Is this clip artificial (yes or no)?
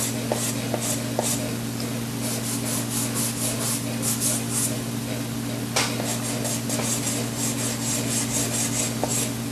no